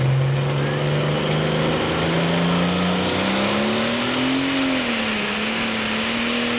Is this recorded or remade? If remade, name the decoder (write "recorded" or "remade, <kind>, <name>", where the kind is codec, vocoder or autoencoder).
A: recorded